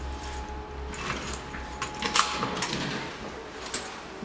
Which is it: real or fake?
real